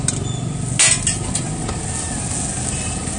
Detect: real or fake real